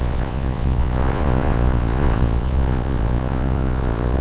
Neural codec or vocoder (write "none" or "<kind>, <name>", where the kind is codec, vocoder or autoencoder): vocoder, Vocos